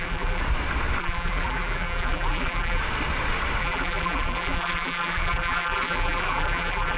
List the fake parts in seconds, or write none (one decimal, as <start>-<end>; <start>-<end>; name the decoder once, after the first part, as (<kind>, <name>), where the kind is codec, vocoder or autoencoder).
0.0-0.4 (vocoder, BigVGAN v2); 1.0-2.8; 3.6-7.0